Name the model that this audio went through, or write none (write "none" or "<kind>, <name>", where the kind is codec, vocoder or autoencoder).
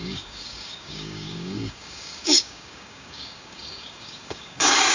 codec, DAC